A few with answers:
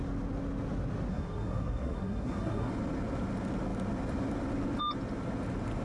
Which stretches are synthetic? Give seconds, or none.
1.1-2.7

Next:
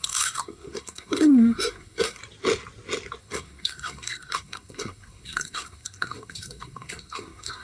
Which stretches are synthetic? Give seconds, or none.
0.0-2.2; 3.2-7.6

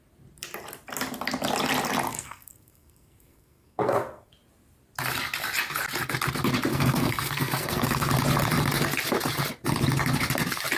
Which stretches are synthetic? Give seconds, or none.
2.1-4.3; 6.7-8.1

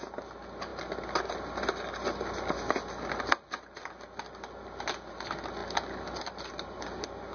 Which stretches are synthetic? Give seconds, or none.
none

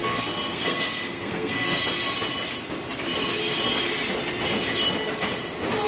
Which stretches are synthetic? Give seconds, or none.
0.0-1.8

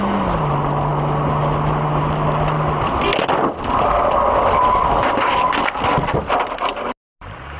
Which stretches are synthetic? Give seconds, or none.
none